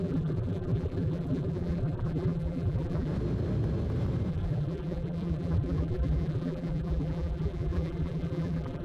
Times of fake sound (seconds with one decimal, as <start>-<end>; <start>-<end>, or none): 0.0-3.1; 4.3-8.8